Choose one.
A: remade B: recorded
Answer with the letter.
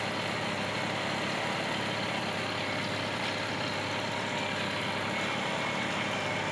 B